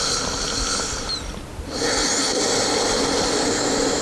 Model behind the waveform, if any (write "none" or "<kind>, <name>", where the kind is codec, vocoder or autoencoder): none